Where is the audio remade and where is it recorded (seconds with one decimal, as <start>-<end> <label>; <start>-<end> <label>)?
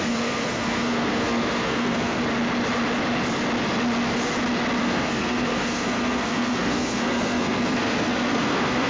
0.0-2.2 remade; 2.2-4.8 recorded; 4.8-8.9 remade